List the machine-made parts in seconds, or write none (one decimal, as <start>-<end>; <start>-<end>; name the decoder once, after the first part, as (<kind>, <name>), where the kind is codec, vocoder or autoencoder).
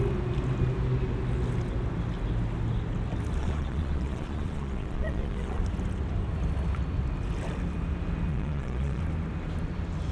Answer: 3.4-5.6 (vocoder, Vocos); 8.3-9.0